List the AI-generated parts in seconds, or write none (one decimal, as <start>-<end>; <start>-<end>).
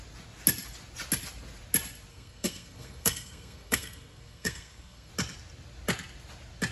2.1-5.1